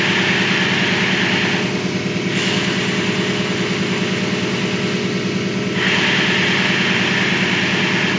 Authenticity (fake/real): real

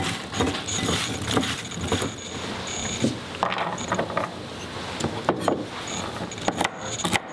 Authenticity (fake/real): real